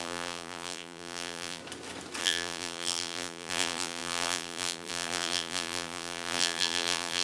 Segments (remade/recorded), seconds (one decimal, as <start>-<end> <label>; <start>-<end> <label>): 0.0-1.6 remade; 1.6-2.2 recorded; 2.2-7.2 remade